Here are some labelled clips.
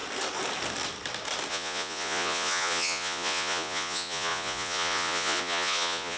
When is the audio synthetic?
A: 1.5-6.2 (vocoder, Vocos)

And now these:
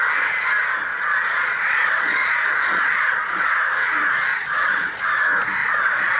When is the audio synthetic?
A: 0.9-3.5 (vocoder, Vocos); 4.3-5.0; 5.6-6.2

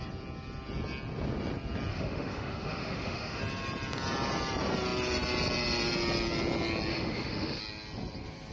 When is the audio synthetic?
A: 1.9-3.4 (autoencoder, DAC-VAE); 6.9-7.6

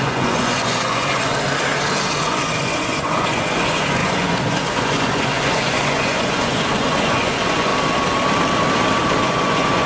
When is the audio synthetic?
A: 0.0-1.3 (vocoder, Vocos); 2.2-7.7; 9.2-9.9

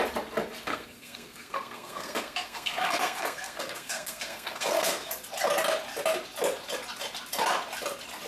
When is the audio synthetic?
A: 0.7-5.1 (codec, SNAC)

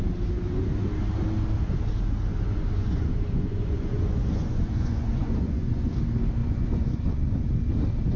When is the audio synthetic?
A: 2.3-6.0 (vocoder, Vocos); 6.4-7.5